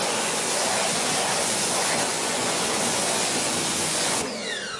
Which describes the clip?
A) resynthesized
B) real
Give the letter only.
A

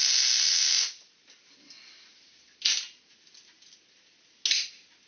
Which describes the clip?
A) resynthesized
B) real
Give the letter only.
B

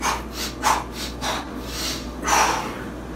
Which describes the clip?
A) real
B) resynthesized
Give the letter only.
A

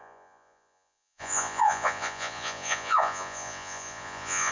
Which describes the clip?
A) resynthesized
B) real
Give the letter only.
A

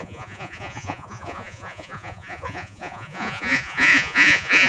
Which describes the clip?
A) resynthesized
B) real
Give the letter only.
A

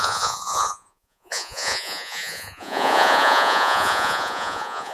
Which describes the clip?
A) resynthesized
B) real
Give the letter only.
A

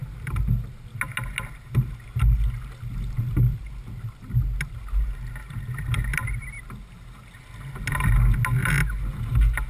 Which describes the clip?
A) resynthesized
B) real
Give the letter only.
B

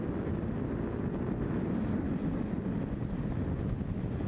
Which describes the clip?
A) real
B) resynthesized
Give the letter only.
A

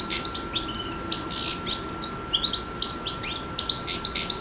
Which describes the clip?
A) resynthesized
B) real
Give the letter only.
B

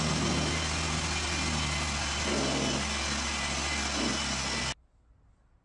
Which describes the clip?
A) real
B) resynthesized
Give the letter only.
A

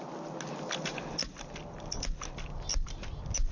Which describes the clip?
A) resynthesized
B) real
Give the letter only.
B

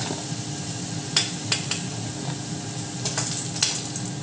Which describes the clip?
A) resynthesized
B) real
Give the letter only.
B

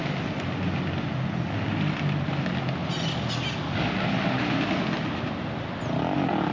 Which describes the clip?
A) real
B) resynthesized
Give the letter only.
A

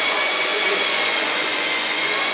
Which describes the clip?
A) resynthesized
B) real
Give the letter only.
A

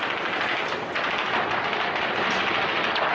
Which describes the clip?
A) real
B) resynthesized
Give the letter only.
A